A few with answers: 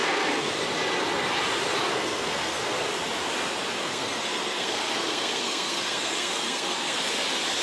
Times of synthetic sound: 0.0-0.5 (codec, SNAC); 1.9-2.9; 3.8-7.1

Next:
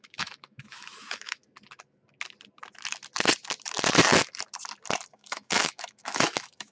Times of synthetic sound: 0.0-1.4 (autoencoder, DAC-VAE); 5.1-6.7

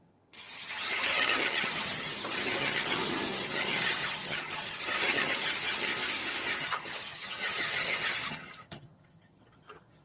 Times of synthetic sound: 0.0-5.9 (vocoder, HiFi-GAN); 6.6-10.0